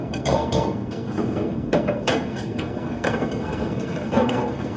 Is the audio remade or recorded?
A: remade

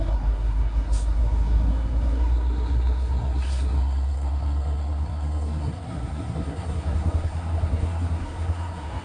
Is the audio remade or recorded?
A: remade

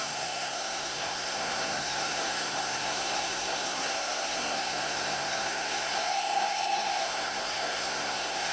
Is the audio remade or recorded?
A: remade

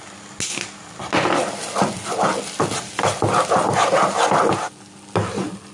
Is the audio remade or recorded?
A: recorded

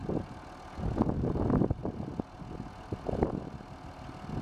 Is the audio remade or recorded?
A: recorded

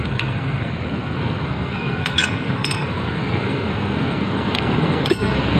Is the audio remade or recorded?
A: remade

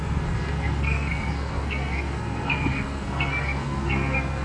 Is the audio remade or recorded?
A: remade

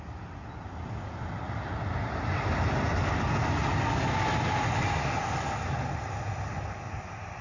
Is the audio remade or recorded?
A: recorded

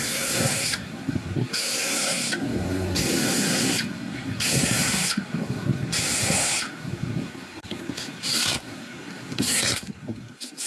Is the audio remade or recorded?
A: remade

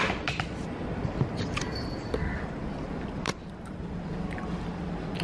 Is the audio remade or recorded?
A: recorded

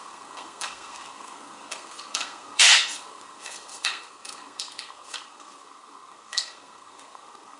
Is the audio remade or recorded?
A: remade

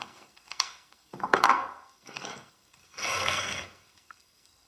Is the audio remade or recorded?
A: remade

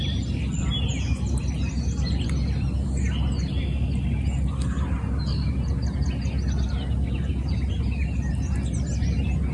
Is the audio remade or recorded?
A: recorded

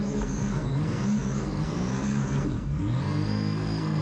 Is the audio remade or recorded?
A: remade